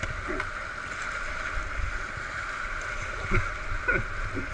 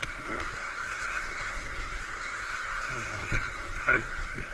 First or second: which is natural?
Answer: first